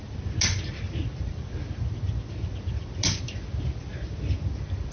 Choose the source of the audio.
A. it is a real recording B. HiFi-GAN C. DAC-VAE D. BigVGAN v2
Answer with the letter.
A